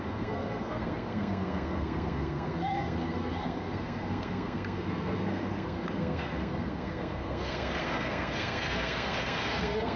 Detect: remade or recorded remade